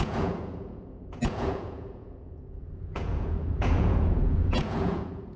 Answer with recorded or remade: remade